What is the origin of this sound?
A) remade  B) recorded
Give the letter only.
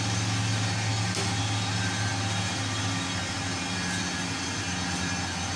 B